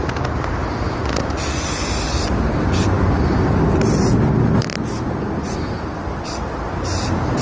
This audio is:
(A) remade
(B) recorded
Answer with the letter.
B